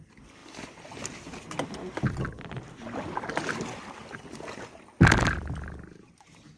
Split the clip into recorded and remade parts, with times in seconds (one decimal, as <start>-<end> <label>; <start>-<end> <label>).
0.0-6.6 recorded